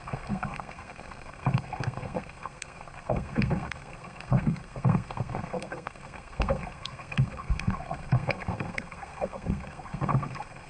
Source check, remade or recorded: remade